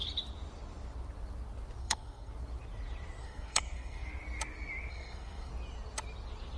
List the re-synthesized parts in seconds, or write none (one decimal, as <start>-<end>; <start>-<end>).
1.8-2.3; 3.2-4.1; 4.9-5.5